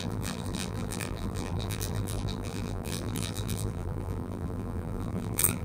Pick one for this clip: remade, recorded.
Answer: remade